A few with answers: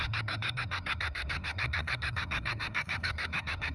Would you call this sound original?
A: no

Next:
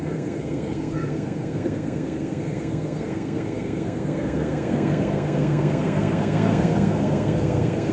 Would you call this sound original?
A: no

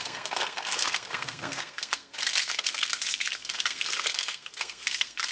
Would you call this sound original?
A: no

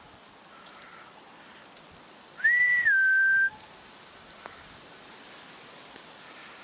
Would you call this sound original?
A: yes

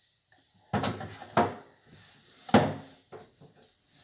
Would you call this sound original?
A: yes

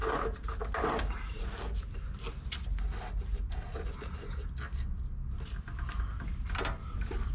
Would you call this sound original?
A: yes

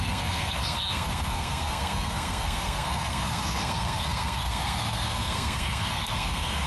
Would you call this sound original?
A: no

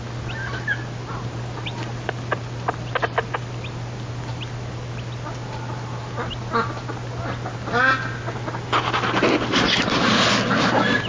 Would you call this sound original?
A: yes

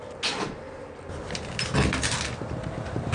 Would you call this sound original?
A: yes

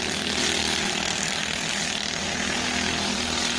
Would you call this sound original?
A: yes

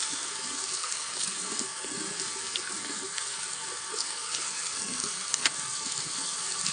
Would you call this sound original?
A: no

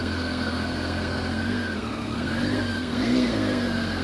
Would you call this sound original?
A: no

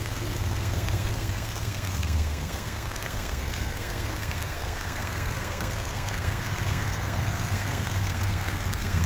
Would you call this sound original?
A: no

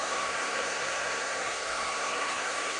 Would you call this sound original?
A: no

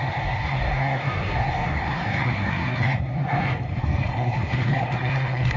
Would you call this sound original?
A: no